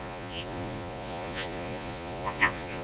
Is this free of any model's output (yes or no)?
no